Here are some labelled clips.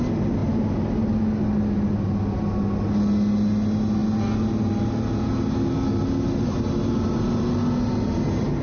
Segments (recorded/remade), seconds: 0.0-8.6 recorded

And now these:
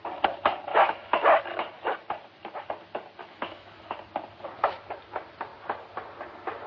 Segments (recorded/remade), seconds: 0.0-0.7 recorded; 0.7-1.4 remade; 1.4-3.2 recorded; 3.2-3.9 remade; 3.9-6.7 recorded